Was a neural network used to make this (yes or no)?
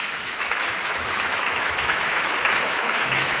yes